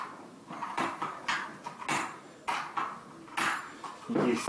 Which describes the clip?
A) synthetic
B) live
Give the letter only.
B